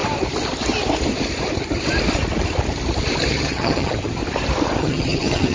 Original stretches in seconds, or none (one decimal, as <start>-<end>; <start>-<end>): 0.0-3.3; 4.2-4.8